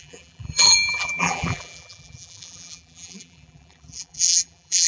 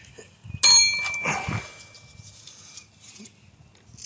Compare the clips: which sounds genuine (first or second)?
second